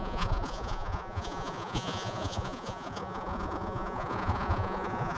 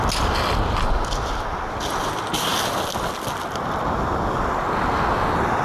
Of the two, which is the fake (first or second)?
first